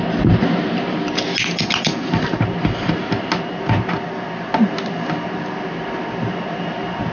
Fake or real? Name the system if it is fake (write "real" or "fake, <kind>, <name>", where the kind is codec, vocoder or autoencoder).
real